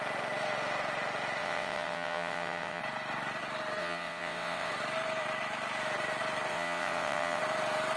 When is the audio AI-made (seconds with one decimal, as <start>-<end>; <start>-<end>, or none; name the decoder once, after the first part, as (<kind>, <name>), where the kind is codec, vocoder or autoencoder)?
1.4-2.8 (vocoder, WaveNeXt); 3.8-4.7; 6.5-7.4